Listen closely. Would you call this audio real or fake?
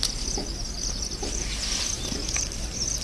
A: real